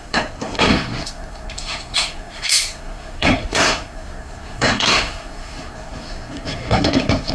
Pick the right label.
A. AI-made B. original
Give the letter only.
A